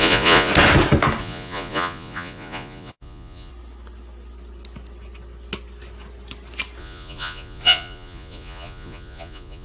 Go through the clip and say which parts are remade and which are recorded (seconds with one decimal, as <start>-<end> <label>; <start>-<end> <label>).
0.0-0.5 remade; 0.5-1.2 recorded; 1.2-3.5 remade; 3.5-6.8 recorded; 6.8-9.6 remade